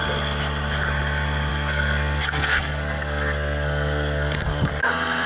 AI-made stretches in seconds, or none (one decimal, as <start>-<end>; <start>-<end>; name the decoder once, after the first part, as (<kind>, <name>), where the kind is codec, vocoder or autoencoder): 1.5-4.7 (codec, SNAC)